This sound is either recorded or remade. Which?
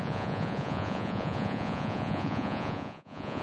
remade